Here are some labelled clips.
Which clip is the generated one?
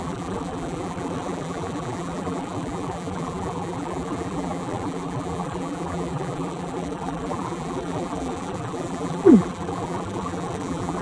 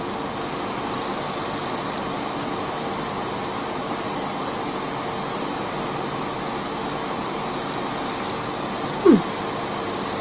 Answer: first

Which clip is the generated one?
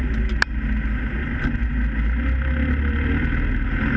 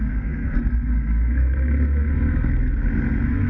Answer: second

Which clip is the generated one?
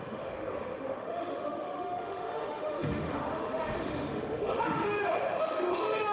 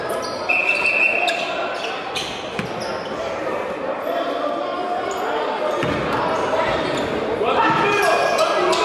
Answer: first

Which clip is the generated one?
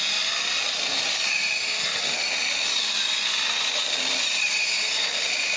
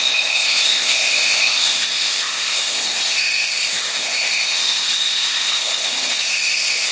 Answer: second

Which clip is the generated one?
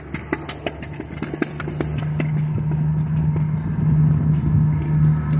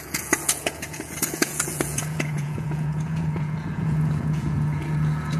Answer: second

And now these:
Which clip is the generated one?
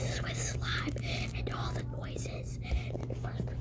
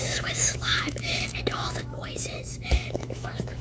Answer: second